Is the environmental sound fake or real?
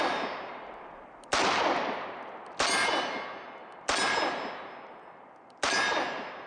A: real